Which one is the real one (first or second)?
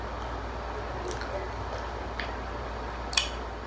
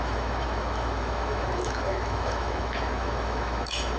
first